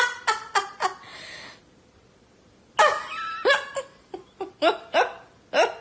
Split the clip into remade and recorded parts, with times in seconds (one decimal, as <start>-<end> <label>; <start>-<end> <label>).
0.0-5.8 recorded

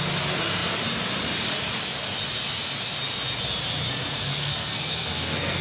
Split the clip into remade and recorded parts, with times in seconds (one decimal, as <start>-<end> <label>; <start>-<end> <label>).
0.0-4.4 recorded; 4.4-5.6 remade